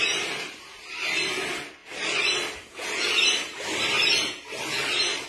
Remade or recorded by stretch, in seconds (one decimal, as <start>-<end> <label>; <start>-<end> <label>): 0.0-5.3 recorded